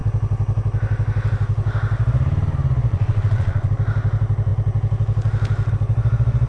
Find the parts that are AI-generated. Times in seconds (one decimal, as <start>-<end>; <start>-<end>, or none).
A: 2.9-3.7